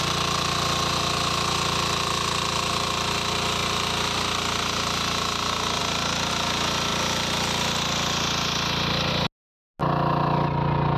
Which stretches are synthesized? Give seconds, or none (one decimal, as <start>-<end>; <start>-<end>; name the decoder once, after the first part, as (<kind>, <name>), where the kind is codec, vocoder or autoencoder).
none